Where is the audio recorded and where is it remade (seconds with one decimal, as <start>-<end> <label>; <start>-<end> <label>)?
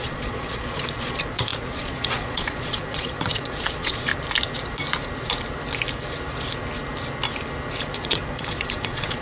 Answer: 0.0-4.1 remade; 4.1-7.8 recorded; 7.8-9.2 remade